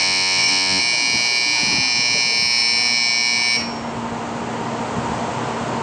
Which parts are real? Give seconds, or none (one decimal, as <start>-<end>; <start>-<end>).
0.8-5.8